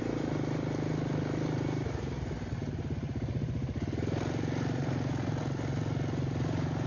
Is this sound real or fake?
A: real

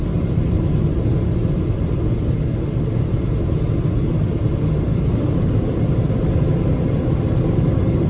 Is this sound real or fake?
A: real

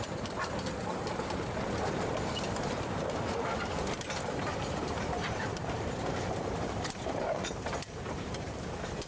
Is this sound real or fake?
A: fake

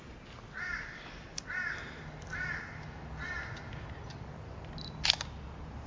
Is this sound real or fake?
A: real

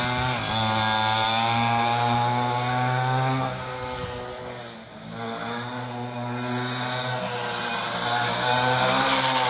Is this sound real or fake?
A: real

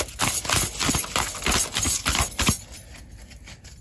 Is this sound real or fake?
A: real